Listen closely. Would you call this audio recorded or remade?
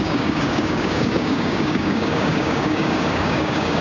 remade